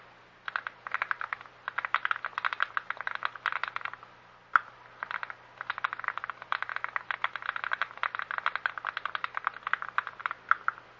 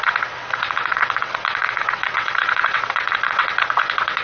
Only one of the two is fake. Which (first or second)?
second